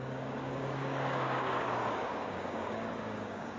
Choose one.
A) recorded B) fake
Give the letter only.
B